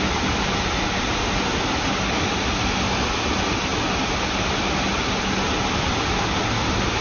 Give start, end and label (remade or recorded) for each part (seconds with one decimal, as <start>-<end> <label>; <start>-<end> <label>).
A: 0.0-7.0 recorded